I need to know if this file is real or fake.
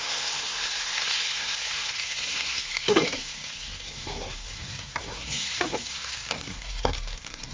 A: fake